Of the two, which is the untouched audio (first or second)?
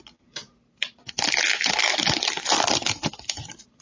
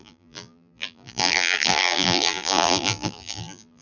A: first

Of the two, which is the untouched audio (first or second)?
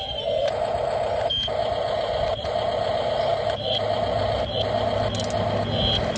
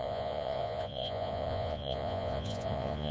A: first